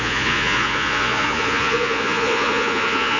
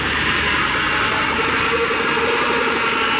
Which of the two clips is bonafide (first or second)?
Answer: second